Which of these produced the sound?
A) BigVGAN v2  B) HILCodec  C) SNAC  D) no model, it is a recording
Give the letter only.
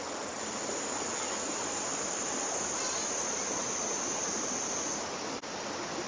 D